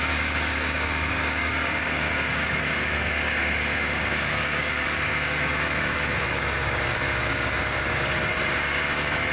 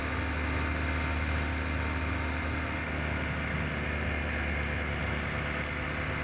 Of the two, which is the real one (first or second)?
second